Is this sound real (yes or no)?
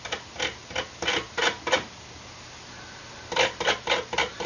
yes